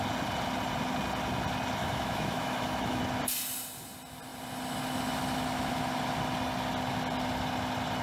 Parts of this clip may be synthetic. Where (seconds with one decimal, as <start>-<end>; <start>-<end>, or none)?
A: 1.8-3.0